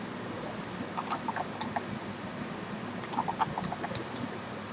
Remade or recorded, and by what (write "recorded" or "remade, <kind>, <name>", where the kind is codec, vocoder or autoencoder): recorded